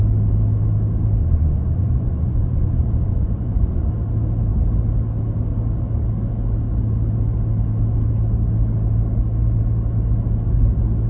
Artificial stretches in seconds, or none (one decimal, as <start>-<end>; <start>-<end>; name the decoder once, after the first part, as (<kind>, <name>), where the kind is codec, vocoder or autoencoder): 1.2-3.9 (vocoder, Vocos)